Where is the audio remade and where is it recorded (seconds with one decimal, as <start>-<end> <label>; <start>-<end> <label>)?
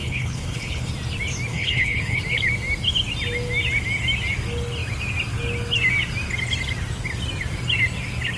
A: 0.0-0.9 remade; 0.9-1.5 recorded; 1.5-2.2 remade; 2.2-8.4 recorded